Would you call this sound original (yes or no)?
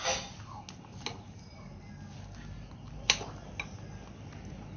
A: yes